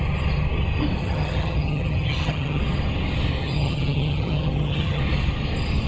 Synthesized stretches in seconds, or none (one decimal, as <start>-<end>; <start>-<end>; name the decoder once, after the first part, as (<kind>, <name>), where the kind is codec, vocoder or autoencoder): 1.0-2.6 (vocoder, HiFi-GAN); 3.4-5.0